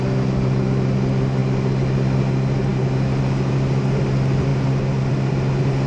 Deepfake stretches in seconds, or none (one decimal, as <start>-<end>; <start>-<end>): none